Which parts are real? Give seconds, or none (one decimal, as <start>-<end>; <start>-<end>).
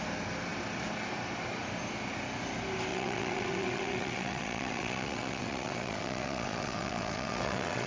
0.0-2.9